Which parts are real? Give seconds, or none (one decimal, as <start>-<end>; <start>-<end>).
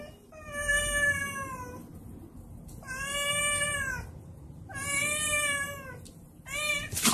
0.0-7.1